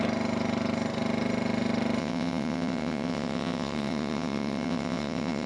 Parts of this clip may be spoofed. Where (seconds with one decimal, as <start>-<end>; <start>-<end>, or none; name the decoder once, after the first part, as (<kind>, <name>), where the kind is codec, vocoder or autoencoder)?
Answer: 2.0-5.5 (vocoder, WaveNeXt)